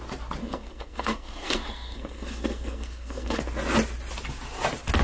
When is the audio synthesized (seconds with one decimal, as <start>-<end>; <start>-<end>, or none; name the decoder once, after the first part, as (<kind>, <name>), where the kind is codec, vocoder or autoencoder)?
0.4-3.4 (codec, SNAC)